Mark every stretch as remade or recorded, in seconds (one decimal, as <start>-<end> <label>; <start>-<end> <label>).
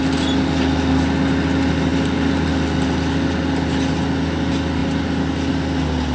0.0-6.1 recorded